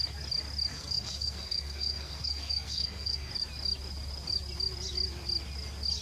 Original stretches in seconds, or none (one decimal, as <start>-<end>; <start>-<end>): 0.0-0.7; 3.3-6.0